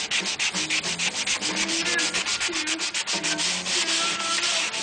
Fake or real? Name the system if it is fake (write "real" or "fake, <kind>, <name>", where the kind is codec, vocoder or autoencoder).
real